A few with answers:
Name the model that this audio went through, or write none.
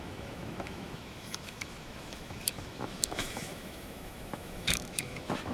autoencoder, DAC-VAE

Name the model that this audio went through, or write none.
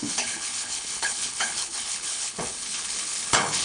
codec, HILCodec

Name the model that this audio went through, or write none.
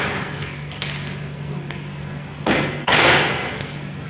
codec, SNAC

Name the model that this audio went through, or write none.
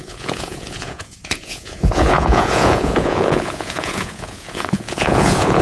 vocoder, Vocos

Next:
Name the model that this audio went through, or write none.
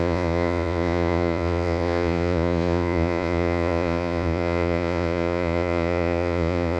vocoder, Vocos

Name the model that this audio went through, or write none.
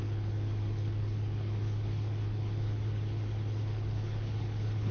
codec, HILCodec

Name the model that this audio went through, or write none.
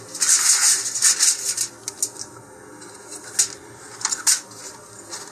none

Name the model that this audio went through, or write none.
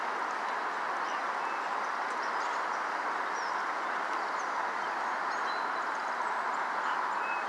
none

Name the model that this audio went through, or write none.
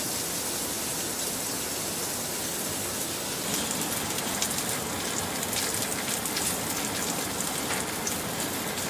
none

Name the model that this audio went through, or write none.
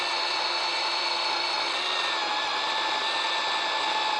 none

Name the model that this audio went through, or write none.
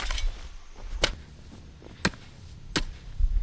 none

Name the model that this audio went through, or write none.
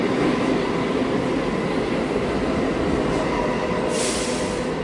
none